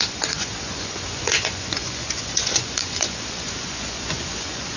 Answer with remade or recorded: remade